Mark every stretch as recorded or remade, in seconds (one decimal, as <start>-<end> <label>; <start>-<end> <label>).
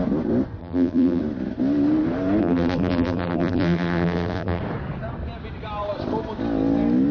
0.0-0.6 recorded; 0.6-1.2 remade; 1.2-2.4 recorded; 2.4-4.6 remade; 4.6-7.1 recorded